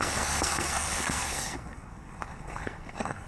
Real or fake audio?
fake